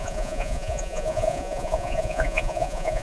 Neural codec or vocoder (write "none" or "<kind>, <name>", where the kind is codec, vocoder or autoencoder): vocoder, Vocos